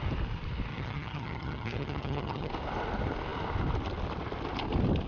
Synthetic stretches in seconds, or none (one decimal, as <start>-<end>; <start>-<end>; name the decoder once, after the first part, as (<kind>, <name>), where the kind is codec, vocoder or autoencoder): 0.7-2.5 (vocoder, HiFi-GAN)